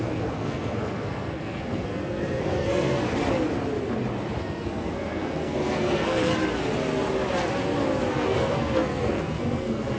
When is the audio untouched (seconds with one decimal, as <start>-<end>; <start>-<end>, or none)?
3.0-4.4; 6.3-8.1